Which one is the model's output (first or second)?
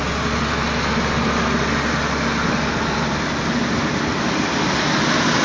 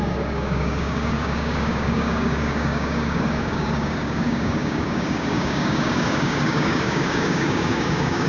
second